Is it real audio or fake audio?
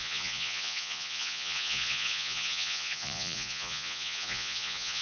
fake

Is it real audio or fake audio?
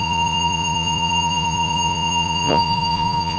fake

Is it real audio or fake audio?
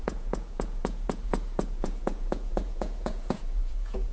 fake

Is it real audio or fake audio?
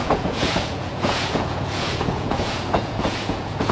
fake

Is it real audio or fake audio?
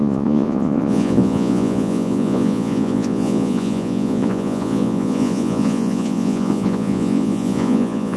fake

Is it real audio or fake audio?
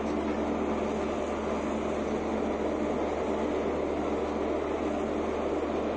real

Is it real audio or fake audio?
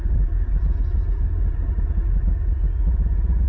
real